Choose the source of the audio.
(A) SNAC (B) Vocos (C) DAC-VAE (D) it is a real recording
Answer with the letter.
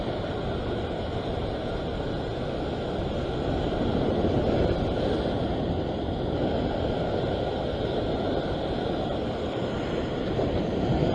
D